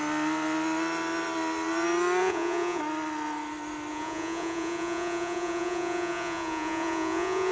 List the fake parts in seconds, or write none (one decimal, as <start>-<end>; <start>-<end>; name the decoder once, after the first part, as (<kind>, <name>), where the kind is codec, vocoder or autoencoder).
2.2-2.8 (vocoder, Vocos); 3.9-7.5